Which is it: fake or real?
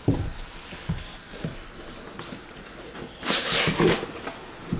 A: real